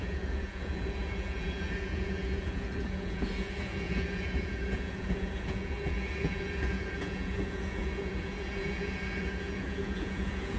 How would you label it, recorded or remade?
remade